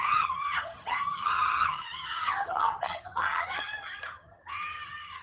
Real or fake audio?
fake